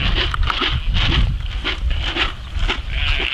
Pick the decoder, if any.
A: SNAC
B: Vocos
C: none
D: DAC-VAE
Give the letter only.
C